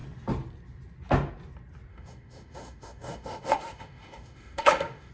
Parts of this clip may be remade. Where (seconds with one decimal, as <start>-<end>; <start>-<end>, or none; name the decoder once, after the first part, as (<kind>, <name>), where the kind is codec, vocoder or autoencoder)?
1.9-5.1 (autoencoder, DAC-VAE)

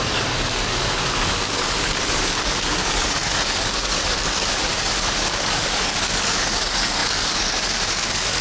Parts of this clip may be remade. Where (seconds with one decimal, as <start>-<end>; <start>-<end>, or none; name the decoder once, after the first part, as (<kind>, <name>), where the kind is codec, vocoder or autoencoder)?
0.0-8.4 (codec, DAC)

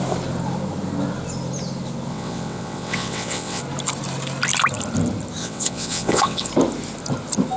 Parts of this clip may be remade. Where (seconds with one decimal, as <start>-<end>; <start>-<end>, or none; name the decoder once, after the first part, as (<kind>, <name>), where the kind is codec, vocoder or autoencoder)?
2.1-3.6 (vocoder, WaveNeXt); 5.4-6.5

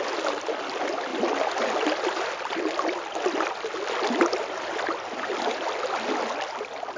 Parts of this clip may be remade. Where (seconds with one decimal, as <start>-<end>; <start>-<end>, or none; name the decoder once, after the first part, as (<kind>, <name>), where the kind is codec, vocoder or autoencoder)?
none

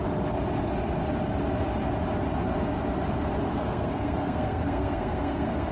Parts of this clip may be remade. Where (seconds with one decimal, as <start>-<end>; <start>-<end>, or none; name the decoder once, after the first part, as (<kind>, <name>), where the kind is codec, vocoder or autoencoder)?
3.5-5.7 (codec, SNAC)

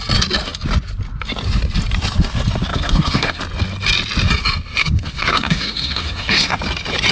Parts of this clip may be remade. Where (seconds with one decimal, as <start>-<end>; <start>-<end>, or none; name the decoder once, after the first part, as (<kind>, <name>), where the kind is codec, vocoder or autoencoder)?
2.7-3.4 (codec, SNAC); 4.8-6.6

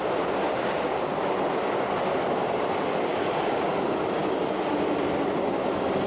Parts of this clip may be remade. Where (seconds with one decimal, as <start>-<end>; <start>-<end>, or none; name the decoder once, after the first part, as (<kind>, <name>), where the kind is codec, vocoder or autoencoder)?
3.1-3.7 (codec, DAC)

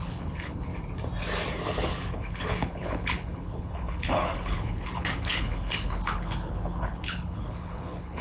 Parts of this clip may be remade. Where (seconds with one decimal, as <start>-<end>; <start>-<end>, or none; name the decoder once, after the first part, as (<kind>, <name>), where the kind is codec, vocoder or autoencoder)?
0.0-0.7 (codec, HILCodec); 1.6-8.2